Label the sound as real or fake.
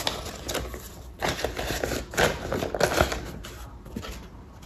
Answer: real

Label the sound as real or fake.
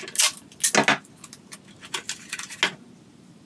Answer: real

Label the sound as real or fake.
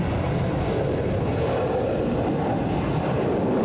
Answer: real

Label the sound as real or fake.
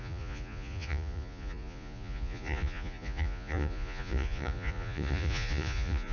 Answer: fake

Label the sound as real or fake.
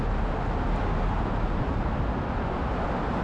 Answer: real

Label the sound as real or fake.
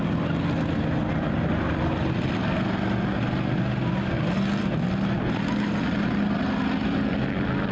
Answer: real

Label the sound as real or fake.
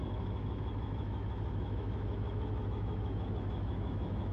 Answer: fake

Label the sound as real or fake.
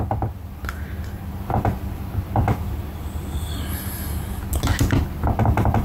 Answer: real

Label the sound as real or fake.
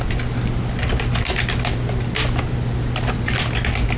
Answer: real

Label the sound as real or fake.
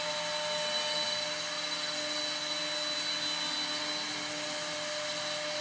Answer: real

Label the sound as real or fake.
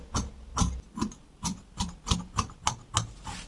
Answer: real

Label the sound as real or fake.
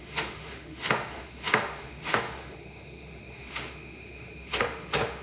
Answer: fake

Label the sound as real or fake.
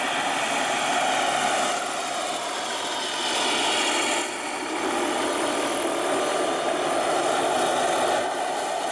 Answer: real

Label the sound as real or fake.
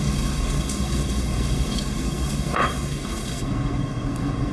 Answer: fake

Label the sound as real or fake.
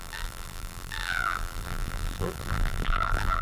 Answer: fake